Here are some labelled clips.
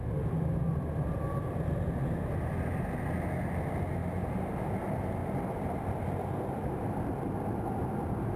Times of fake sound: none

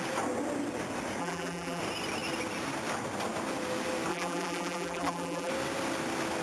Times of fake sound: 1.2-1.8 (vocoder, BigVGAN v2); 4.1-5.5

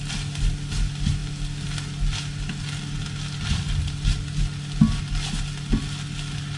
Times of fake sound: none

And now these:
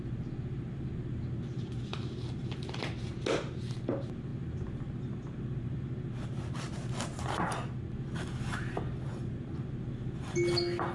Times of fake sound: 1.9-2.9 (vocoder, BigVGAN v2)

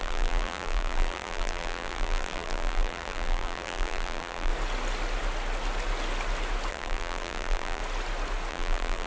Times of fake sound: 0.0-4.5 (vocoder, BigVGAN v2); 6.7-7.8; 8.5-9.1

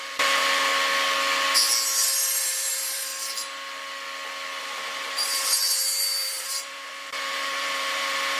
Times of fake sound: 0.0-0.7 (vocoder, BigVGAN v2); 2.1-3.1; 4.6-8.4